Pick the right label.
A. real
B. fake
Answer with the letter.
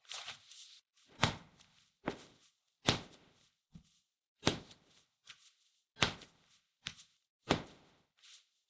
A